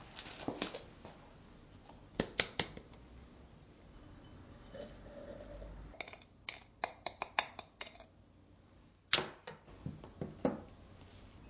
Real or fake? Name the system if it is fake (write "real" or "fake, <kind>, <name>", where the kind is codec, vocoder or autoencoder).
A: real